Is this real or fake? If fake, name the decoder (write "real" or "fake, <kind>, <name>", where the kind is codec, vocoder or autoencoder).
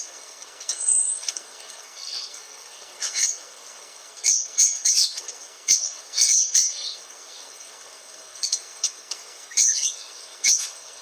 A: fake, codec, SNAC